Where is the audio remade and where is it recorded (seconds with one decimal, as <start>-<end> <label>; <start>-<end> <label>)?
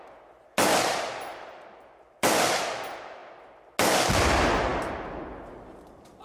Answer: 0.0-1.3 recorded; 1.3-2.5 remade; 2.5-6.2 recorded